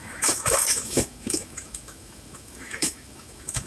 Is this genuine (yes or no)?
no